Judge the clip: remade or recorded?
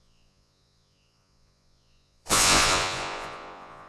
remade